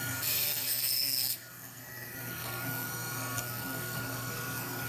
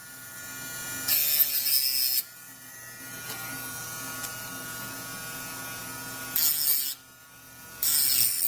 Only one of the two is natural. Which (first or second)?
second